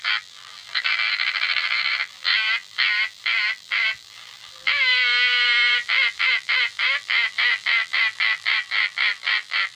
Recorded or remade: remade